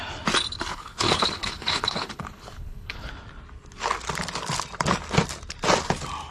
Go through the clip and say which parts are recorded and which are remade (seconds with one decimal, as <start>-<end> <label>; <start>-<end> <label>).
0.0-0.7 recorded; 0.7-3.1 remade; 3.1-6.3 recorded